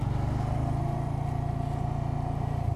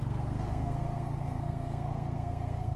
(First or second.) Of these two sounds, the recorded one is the first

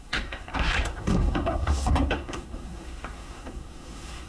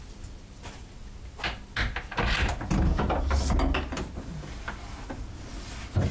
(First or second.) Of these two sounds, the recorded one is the second